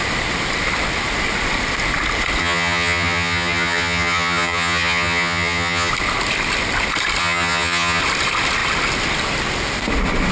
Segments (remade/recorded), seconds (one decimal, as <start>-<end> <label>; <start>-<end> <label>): 0.0-2.4 recorded; 2.4-5.9 remade; 5.9-7.2 recorded; 7.2-8.0 remade; 8.0-10.3 recorded